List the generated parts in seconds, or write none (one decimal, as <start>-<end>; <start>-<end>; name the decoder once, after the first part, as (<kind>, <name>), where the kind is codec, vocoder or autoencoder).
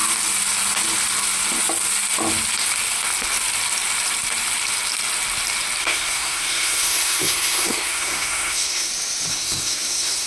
5.8-8.9 (codec, SNAC); 9.3-10.3